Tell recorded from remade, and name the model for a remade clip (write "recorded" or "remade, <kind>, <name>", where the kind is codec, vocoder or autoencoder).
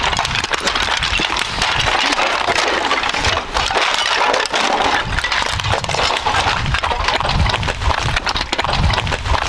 recorded